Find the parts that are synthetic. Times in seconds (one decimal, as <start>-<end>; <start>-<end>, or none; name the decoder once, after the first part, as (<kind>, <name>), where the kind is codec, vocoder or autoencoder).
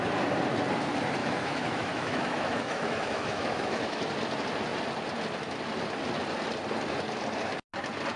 1.2-4.1 (autoencoder, DAC-VAE)